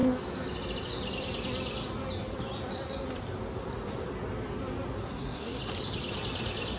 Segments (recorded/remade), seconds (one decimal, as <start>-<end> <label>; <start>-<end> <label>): 0.0-5.0 recorded; 5.0-5.6 remade; 5.6-6.8 recorded